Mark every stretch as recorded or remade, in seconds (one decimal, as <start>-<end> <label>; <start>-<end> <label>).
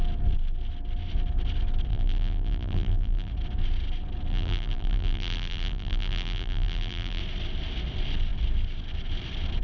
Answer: 0.0-1.9 recorded; 1.9-3.3 remade; 3.3-4.3 recorded; 4.3-7.2 remade; 7.2-9.6 recorded